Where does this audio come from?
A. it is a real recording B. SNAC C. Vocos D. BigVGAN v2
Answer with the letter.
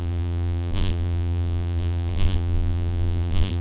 D